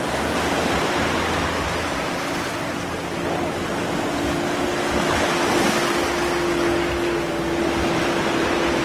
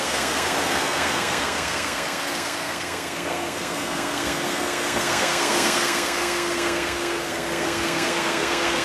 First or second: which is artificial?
second